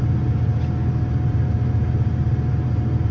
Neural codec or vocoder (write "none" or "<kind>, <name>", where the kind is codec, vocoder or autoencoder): none